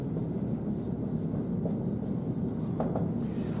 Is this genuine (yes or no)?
yes